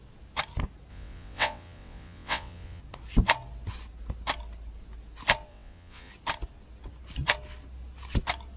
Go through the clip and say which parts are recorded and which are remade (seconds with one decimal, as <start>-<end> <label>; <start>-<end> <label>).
0.0-0.9 recorded; 0.9-2.8 remade; 2.8-5.5 recorded; 5.5-6.1 remade; 6.1-8.6 recorded